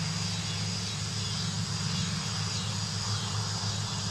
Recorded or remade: recorded